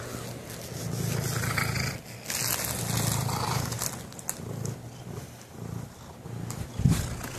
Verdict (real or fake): real